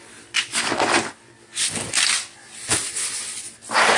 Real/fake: real